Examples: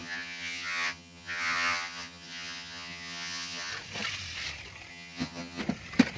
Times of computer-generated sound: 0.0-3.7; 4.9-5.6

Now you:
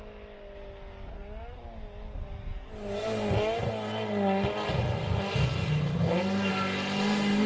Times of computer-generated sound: none

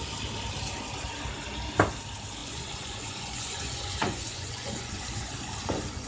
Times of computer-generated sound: 2.4-6.1

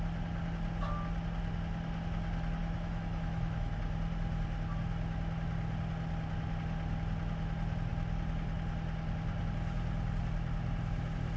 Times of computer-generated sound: 2.6-3.8

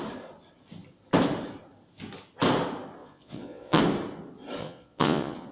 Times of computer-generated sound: 3.0-3.8; 4.6-5.5

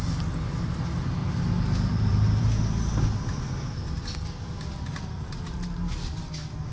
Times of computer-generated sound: 1.2-2.5

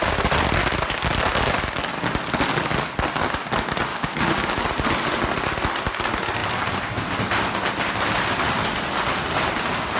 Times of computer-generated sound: 3.9-4.5

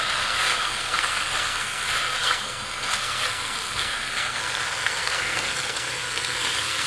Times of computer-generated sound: 0.0-6.9